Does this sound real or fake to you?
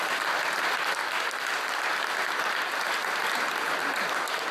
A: real